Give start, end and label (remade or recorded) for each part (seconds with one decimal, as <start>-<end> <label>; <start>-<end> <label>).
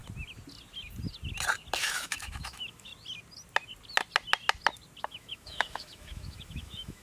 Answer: 0.0-1.8 recorded; 1.8-2.9 remade; 2.9-5.0 recorded; 5.0-7.0 remade